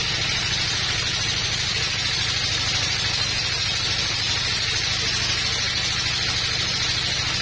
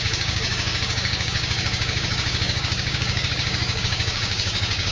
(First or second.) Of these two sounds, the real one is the first